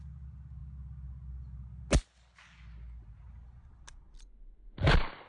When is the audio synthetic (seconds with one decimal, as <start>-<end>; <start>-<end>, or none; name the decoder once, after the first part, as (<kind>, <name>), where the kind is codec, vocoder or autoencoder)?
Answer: none